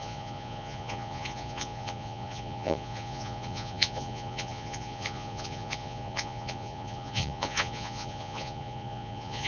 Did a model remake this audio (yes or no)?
yes